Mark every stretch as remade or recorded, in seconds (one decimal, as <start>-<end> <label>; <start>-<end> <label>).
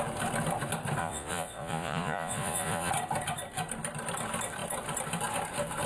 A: 0.0-1.0 recorded; 1.0-2.9 remade; 2.9-5.9 recorded